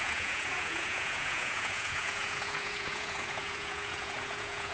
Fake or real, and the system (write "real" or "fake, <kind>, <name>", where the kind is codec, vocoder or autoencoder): fake, vocoder, Vocos